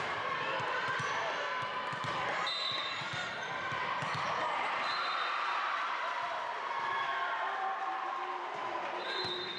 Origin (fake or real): fake